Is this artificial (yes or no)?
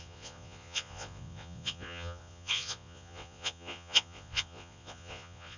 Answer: yes